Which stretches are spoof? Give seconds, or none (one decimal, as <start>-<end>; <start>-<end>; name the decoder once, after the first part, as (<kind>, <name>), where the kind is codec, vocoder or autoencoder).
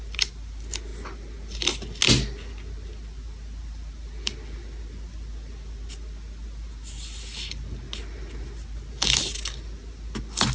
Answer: none